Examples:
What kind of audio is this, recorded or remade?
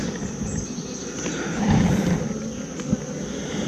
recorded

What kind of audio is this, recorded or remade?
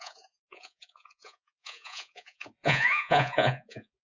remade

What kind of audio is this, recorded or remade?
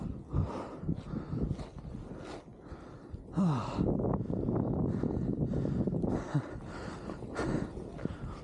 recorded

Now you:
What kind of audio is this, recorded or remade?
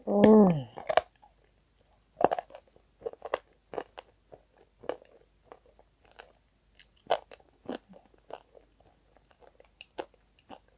recorded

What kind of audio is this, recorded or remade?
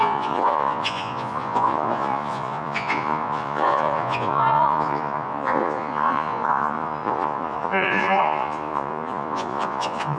remade